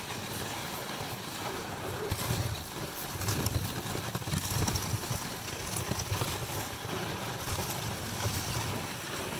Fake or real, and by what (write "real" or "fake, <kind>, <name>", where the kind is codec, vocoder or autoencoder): real